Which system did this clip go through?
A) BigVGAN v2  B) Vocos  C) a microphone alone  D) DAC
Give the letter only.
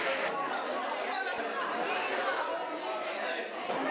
C